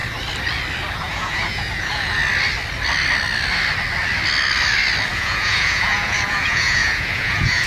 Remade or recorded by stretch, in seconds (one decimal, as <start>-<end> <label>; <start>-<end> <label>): 0.0-0.8 recorded; 0.8-2.2 remade; 2.2-5.1 recorded; 5.1-7.7 remade